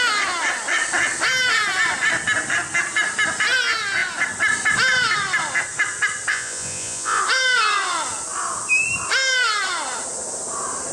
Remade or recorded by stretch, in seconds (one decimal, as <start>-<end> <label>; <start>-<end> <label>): 0.0-6.3 recorded; 6.3-7.2 remade; 7.2-10.9 recorded